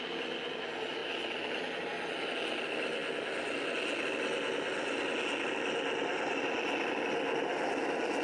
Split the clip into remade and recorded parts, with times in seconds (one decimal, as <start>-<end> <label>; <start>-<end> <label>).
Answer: 0.0-8.2 recorded